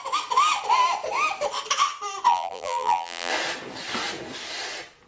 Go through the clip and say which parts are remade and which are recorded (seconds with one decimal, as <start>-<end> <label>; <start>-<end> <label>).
0.0-2.3 recorded; 2.3-3.3 remade; 3.3-5.1 recorded

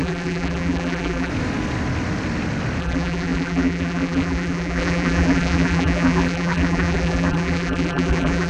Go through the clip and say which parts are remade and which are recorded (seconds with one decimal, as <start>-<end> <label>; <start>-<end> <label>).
0.0-1.3 remade; 1.3-2.8 recorded; 2.8-8.5 remade